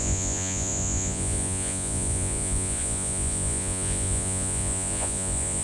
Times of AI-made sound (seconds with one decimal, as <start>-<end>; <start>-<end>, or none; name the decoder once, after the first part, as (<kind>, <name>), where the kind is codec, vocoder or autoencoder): 0.0-5.6 (vocoder, Vocos)